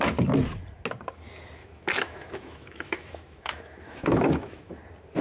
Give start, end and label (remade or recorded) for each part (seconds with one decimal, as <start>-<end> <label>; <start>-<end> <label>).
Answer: 0.0-1.6 recorded; 1.6-4.7 remade; 4.7-5.2 recorded